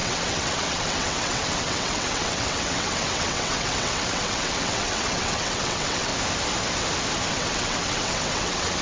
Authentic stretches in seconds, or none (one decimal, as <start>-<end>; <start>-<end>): 6.1-7.3